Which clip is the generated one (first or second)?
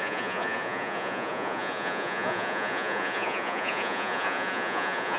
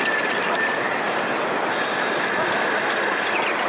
first